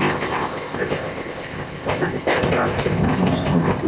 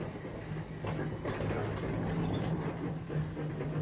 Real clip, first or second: second